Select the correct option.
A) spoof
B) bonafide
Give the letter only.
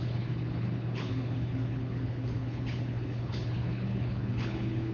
A